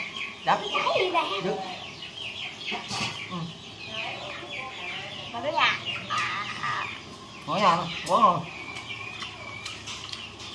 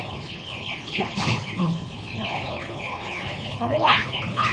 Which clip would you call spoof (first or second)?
second